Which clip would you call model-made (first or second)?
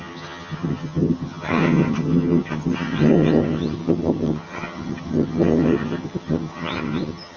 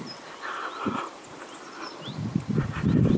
first